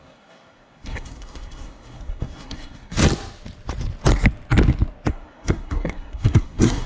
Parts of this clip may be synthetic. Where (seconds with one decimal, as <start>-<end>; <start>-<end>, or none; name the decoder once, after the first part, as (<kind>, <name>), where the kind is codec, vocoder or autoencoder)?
0.0-3.0 (codec, SNAC); 5.1-6.9